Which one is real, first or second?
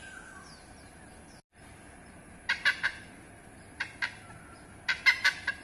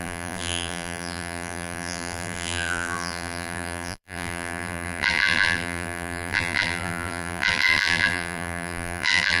first